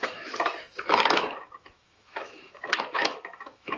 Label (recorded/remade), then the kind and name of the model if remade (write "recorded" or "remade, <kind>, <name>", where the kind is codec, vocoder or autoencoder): remade, autoencoder, DAC-VAE